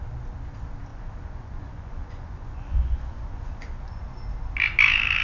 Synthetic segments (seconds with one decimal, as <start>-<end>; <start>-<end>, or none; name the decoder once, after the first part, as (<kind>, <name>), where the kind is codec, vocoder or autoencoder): 0.9-4.0 (vocoder, Vocos)